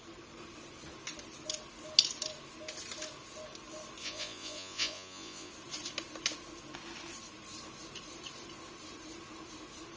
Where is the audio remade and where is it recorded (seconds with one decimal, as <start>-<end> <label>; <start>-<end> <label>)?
0.0-4.0 recorded; 4.0-5.5 remade; 5.5-10.0 recorded